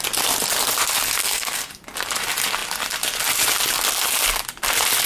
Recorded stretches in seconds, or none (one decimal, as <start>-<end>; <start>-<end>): 0.0-1.2; 1.7-5.1